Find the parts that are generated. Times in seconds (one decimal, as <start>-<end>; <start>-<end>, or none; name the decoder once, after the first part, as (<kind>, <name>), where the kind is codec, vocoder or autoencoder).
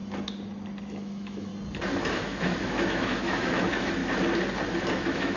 0.9-1.5 (autoencoder, DAC-VAE); 2.0-4.0; 4.9-5.4